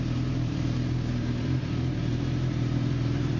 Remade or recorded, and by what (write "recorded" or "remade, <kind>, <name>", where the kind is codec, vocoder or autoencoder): remade, vocoder, BigVGAN v2